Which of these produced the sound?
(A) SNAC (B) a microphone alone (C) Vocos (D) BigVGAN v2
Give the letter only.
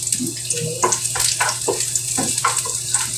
B